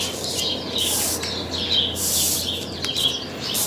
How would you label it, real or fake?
real